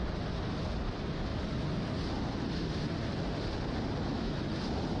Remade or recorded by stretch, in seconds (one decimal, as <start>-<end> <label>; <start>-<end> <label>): 0.0-4.1 recorded; 4.1-4.6 remade; 4.6-5.0 recorded